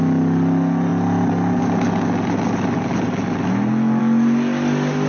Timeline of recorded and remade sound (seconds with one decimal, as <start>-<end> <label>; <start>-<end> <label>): 0.0-5.1 recorded